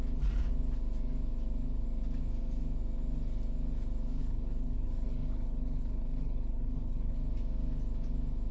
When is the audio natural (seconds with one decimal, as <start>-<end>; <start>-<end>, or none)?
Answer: 0.0-4.2; 7.2-8.5